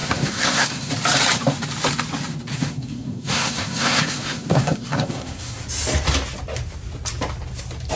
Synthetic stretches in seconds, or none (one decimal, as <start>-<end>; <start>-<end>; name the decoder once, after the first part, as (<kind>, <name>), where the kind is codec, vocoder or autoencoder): 0.0-0.9 (codec, SNAC); 2.5-5.6